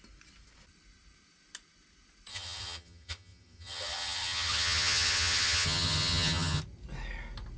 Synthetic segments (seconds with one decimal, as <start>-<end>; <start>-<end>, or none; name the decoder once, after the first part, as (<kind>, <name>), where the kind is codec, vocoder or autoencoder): 2.3-6.6 (vocoder, HiFi-GAN)